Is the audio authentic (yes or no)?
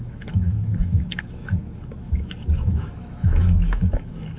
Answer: no